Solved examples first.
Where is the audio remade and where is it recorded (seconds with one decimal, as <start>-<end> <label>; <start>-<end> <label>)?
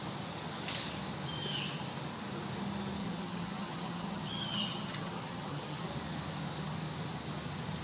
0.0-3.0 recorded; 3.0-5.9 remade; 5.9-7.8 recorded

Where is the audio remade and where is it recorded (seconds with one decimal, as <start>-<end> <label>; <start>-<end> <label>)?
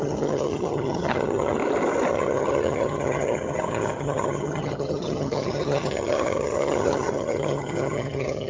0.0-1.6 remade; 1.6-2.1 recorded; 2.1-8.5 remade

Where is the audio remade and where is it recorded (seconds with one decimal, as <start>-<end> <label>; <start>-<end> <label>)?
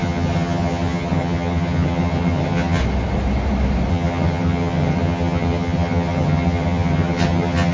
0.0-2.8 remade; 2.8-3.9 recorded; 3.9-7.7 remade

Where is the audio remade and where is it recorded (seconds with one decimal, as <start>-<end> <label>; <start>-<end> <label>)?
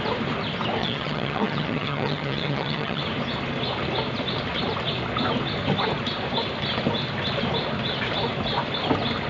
0.0-0.8 recorded; 0.8-3.0 remade; 3.0-9.3 recorded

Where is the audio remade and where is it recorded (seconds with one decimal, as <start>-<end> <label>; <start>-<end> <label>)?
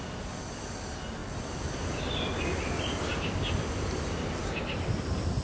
0.0-5.4 recorded